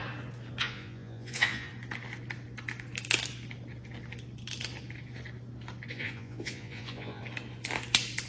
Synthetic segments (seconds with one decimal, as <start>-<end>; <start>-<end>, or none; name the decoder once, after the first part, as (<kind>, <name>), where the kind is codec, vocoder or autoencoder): 0.6-1.7 (vocoder, Vocos); 5.9-7.2